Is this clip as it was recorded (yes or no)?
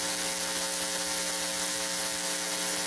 yes